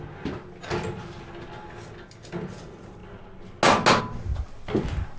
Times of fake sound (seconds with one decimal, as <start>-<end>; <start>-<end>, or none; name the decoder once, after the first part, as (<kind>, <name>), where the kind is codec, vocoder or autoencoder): none